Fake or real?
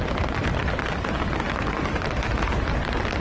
real